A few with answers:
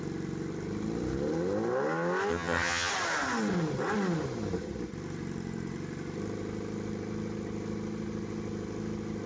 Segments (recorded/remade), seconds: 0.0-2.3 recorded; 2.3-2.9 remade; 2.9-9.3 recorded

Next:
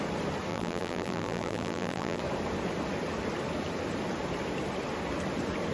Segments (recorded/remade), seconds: 0.0-0.5 recorded; 0.5-2.2 remade; 2.2-5.7 recorded

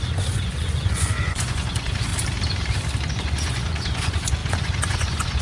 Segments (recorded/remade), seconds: 0.0-2.1 remade; 2.1-3.1 recorded; 3.1-5.4 remade